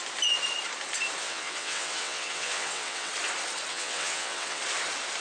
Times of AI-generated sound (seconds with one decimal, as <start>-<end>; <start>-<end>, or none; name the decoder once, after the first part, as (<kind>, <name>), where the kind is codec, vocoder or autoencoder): 1.2-3.1 (vocoder, WaveNeXt); 3.7-4.6